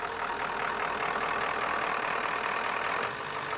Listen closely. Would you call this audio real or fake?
real